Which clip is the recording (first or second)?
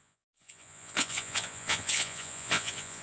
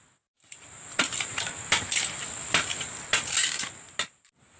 second